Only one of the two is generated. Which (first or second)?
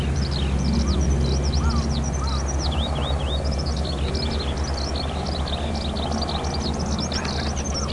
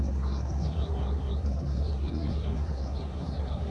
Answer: second